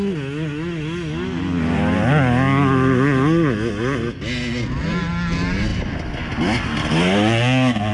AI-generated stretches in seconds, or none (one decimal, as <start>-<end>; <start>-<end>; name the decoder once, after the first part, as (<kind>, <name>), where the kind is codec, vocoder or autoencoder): none